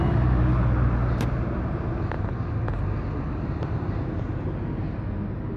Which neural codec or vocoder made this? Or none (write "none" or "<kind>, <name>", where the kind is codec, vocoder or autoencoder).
none